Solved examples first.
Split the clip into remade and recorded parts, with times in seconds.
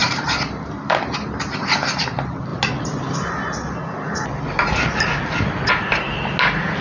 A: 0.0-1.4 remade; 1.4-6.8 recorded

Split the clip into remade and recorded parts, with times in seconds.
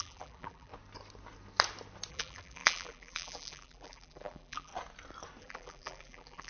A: 0.0-0.7 remade; 0.7-2.1 recorded; 2.1-4.7 remade; 4.7-5.4 recorded; 5.4-6.5 remade